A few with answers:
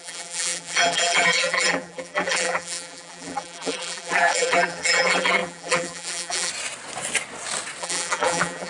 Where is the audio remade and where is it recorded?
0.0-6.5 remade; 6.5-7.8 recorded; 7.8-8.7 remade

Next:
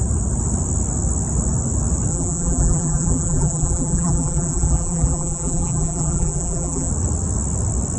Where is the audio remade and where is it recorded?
0.0-2.1 recorded; 2.1-6.9 remade; 6.9-8.0 recorded

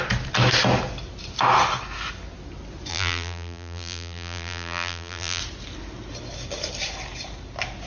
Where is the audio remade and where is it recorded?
0.0-2.9 recorded; 2.9-5.4 remade; 5.4-7.9 recorded

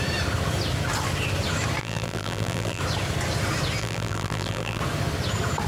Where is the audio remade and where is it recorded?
0.0-1.8 recorded; 1.8-2.8 remade; 2.8-3.8 recorded; 3.8-4.8 remade; 4.8-5.7 recorded

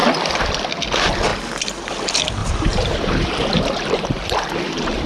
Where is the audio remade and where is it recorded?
0.0-2.4 recorded; 2.4-5.1 remade